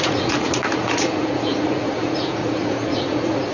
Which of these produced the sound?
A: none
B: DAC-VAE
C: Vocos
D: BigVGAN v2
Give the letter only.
C